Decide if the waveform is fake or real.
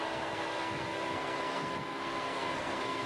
fake